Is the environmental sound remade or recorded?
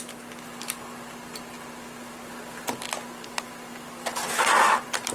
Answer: recorded